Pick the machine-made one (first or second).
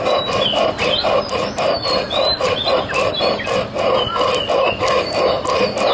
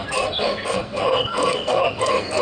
second